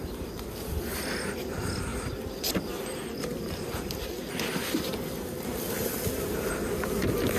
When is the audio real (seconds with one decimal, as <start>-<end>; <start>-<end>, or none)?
0.0-7.4